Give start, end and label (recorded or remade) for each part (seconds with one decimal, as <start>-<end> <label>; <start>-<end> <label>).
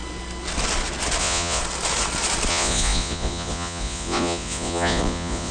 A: 0.0-1.2 recorded; 1.2-1.6 remade; 1.6-2.5 recorded; 2.5-5.5 remade